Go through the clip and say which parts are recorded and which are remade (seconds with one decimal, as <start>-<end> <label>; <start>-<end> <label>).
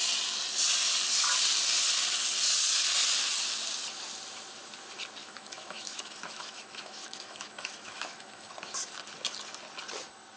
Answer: 0.0-5.2 recorded; 5.2-8.5 remade; 8.5-10.4 recorded